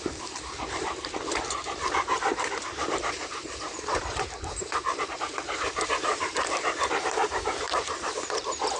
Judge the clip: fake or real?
fake